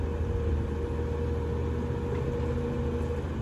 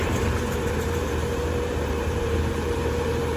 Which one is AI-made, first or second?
second